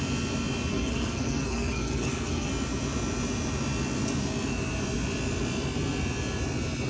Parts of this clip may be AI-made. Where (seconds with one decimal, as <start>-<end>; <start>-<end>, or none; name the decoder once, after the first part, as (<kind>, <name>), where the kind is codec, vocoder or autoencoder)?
0.7-2.5 (codec, SNAC)